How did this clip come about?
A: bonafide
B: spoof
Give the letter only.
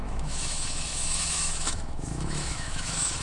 B